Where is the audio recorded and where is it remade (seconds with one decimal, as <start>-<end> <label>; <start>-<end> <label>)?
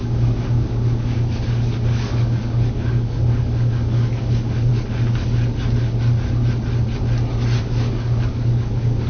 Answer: 0.0-4.7 remade; 4.7-7.6 recorded; 7.6-9.1 remade